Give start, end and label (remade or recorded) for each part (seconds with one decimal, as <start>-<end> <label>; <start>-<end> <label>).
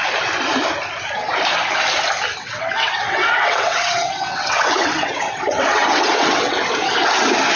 0.0-2.4 recorded; 2.4-6.6 remade; 6.6-7.6 recorded